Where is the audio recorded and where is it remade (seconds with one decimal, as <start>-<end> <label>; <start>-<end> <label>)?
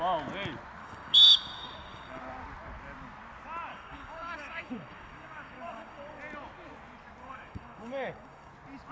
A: 0.0-0.8 recorded; 0.8-2.2 remade; 2.2-3.7 recorded; 3.7-6.2 remade; 6.2-7.2 recorded; 7.2-8.5 remade; 8.5-8.9 recorded